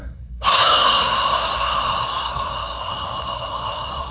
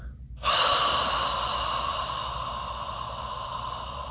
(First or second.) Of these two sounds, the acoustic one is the second